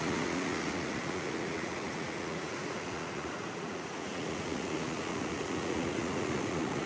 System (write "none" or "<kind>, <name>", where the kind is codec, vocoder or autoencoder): vocoder, Vocos